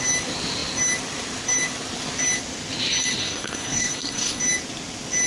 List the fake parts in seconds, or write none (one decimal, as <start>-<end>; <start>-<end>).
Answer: 3.2-4.4